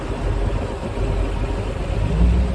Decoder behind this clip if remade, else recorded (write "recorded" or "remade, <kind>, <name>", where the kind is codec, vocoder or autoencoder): recorded